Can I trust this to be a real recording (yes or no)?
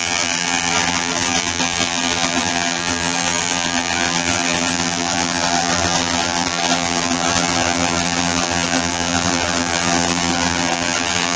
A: no